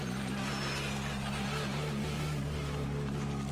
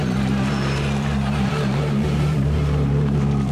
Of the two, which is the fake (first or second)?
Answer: second